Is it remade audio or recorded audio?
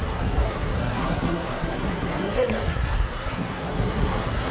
remade